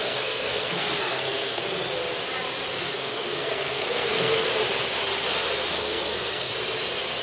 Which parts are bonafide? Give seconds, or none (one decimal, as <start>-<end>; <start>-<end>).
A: 1.6-2.7; 4.5-5.7; 6.5-7.2

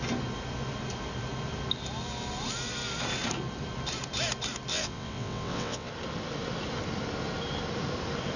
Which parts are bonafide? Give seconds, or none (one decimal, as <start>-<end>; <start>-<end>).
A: 0.0-4.7; 5.9-8.4

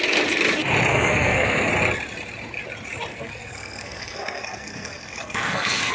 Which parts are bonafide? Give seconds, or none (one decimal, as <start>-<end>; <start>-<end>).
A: 0.0-0.9; 1.7-3.1

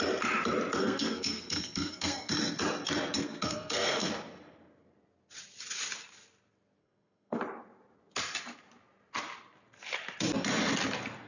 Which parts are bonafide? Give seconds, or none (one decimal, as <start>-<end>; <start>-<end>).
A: 0.0-0.8; 2.3-3.2; 4.1-6.8; 7.4-11.3

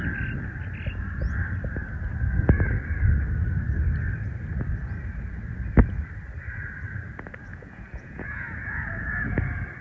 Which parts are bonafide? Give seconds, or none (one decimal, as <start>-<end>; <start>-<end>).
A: 0.0-7.5; 9.4-9.8

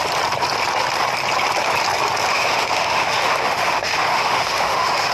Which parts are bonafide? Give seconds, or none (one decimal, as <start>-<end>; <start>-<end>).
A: 0.0-2.3